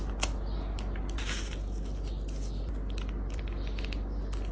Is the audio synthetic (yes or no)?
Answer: no